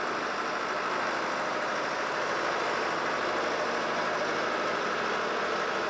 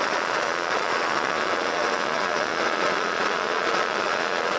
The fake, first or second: second